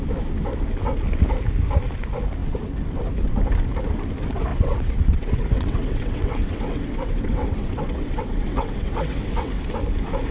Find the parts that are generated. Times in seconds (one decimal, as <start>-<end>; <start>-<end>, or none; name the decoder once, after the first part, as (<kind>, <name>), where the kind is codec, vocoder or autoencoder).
4.5-9.6 (vocoder, WaveNeXt)